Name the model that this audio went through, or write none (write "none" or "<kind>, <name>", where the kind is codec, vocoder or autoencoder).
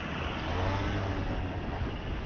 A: none